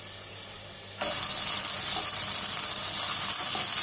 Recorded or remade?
recorded